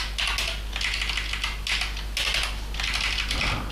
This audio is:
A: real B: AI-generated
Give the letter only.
A